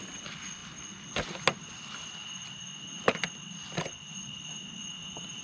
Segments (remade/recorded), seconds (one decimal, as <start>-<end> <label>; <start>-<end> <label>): 0.0-5.4 recorded

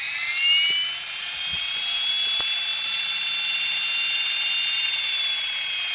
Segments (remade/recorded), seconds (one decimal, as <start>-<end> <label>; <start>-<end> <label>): 0.0-1.2 recorded; 1.2-2.1 remade; 2.1-5.9 recorded

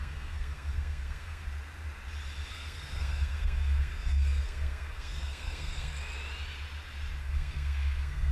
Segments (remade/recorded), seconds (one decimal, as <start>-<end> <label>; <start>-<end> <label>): 0.0-1.4 remade; 1.4-2.5 recorded; 2.5-5.9 remade; 5.9-7.2 recorded; 7.2-8.3 remade

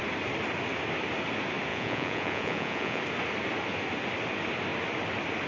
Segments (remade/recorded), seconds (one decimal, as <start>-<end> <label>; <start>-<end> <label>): 0.0-1.7 recorded; 1.7-3.0 remade; 3.0-5.5 recorded